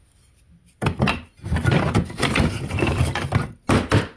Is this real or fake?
real